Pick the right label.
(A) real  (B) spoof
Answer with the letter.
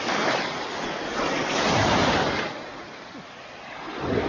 A